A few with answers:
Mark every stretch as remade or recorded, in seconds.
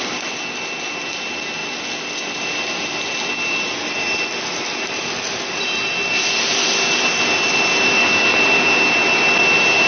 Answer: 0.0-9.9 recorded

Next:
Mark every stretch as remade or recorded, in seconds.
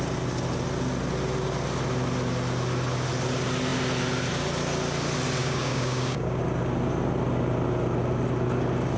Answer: 0.0-5.4 recorded; 5.4-6.4 remade; 6.4-9.0 recorded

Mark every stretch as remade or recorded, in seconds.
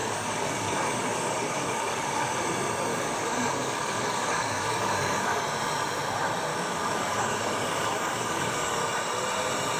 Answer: 0.0-2.4 remade; 2.4-2.9 recorded; 2.9-5.4 remade; 5.4-6.5 recorded; 6.5-8.8 remade; 8.8-9.8 recorded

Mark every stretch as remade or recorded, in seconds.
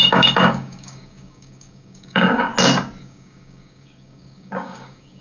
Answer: 0.0-2.5 remade; 2.5-3.0 recorded; 3.0-5.2 remade